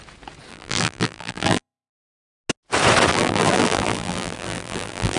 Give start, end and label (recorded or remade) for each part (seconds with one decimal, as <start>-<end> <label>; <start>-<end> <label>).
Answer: 0.0-0.5 recorded; 0.5-1.9 remade; 1.9-3.1 recorded; 3.1-5.2 remade